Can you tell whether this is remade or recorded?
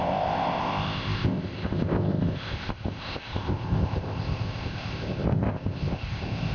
remade